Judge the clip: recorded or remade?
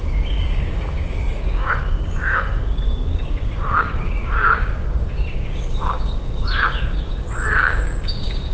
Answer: remade